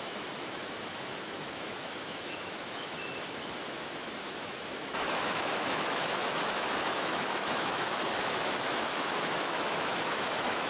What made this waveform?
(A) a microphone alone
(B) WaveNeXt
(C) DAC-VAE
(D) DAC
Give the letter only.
C